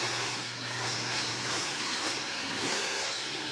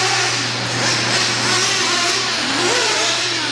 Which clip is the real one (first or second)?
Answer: second